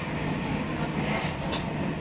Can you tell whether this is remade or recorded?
recorded